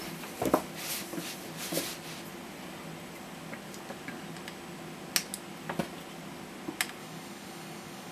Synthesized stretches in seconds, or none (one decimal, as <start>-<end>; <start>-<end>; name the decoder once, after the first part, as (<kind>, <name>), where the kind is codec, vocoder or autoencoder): 7.0-8.1 (codec, DAC)

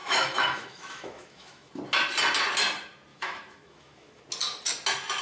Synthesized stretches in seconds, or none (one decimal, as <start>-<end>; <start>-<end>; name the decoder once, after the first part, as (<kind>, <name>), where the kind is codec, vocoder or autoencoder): 0.0-1.7 (autoencoder, DAC-VAE); 3.1-4.2

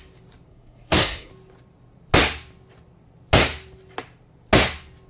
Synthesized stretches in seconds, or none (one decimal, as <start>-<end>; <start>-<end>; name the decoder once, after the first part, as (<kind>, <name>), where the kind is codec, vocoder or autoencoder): 0.5-1.3 (codec, SNAC)

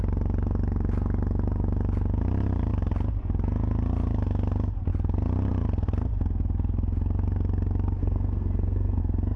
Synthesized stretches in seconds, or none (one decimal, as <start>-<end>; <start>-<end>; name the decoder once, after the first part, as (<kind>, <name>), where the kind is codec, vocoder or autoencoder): 8.0-9.0 (codec, SNAC)

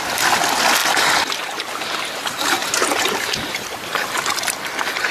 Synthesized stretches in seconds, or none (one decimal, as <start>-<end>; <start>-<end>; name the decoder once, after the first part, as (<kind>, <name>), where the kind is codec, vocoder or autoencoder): 2.6-4.3 (vocoder, BigVGAN v2)

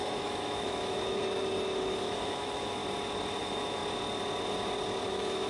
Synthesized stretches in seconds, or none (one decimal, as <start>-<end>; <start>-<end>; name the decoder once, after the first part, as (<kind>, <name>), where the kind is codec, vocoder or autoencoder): 0.0-1.2 (autoencoder, DAC-VAE); 1.8-2.8; 3.4-3.8; 5.1-5.5

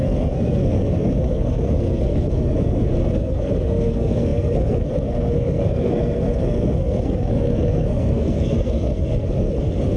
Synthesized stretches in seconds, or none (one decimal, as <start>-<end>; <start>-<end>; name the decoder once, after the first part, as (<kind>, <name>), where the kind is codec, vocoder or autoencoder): 0.0-10.0 (codec, SNAC)